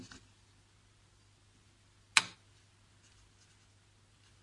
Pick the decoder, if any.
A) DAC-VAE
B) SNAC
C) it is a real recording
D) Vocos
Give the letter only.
C